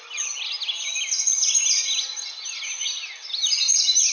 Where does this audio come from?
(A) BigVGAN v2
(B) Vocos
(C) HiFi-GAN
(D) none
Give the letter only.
D